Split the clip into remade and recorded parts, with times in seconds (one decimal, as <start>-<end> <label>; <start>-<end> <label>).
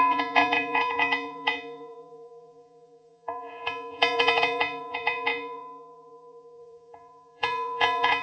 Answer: 0.0-8.2 remade